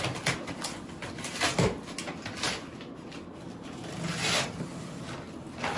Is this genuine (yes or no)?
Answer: yes